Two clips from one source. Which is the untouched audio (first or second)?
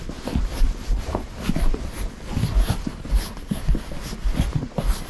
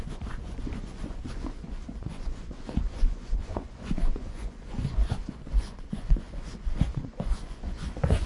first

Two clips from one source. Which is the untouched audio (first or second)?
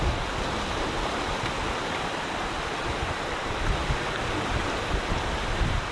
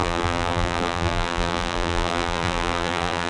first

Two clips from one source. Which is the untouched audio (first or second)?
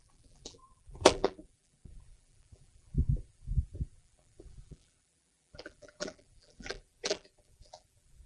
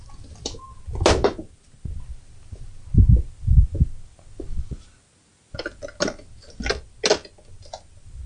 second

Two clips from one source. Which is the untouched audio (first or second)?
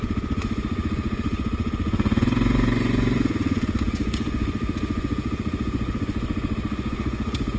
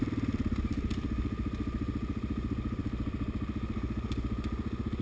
second